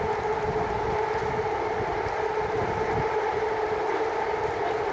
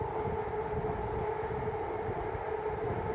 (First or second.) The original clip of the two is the second